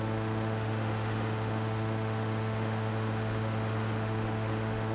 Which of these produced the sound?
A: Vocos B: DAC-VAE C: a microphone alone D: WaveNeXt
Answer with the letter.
B